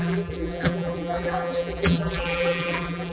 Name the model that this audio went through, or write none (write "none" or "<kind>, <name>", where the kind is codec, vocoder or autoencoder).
vocoder, BigVGAN v2